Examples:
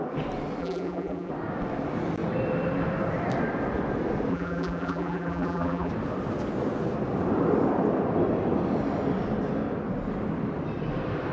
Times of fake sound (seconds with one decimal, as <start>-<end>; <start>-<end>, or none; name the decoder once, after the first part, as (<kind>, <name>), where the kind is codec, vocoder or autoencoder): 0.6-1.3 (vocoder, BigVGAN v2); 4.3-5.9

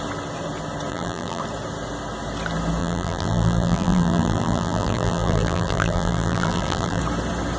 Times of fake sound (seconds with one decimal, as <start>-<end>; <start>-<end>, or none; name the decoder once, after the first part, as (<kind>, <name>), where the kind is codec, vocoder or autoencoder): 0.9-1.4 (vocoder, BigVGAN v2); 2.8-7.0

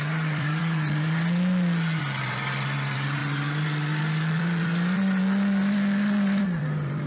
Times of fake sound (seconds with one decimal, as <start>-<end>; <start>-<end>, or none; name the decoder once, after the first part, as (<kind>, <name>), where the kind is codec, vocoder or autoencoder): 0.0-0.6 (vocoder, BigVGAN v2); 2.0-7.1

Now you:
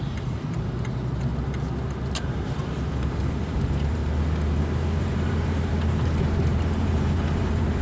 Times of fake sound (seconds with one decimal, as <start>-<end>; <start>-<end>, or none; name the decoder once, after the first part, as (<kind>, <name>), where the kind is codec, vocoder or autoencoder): 0.0-1.3 (vocoder, BigVGAN v2); 3.3-4.0; 5.0-5.7; 6.8-7.8

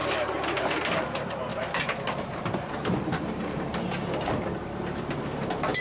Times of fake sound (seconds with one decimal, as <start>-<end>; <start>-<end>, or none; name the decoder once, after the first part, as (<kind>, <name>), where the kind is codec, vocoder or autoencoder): 0.0-0.8 (vocoder, BigVGAN v2); 1.5-5.0